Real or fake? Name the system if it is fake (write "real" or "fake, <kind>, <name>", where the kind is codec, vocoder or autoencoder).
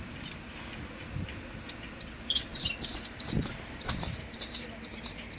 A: fake, vocoder, BigVGAN v2